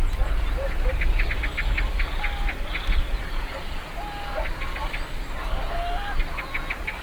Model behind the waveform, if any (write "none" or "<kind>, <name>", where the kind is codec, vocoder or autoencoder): none